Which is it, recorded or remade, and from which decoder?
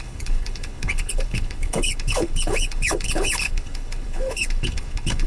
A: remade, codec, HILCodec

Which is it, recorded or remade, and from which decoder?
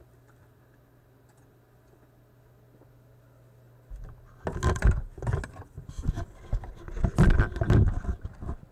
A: recorded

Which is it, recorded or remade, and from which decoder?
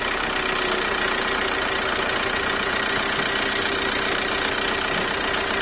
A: recorded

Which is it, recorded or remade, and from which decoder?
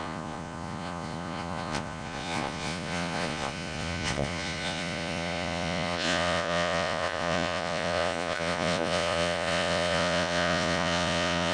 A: remade, vocoder, Vocos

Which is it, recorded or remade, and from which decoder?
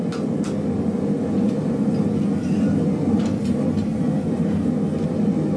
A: recorded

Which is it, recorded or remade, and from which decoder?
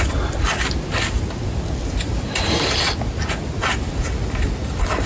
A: recorded